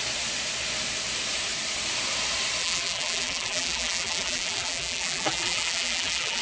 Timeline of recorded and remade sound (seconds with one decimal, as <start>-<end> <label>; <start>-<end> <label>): 0.0-2.6 recorded; 2.6-6.4 remade